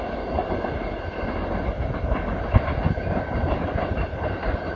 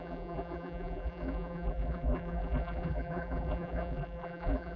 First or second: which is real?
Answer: first